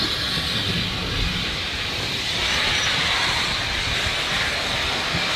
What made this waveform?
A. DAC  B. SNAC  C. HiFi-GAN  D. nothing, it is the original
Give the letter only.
D